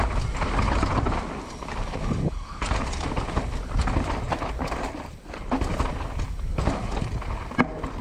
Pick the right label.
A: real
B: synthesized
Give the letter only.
A